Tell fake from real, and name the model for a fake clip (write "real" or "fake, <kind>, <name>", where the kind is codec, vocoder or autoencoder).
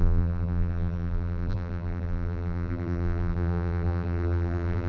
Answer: fake, vocoder, BigVGAN v2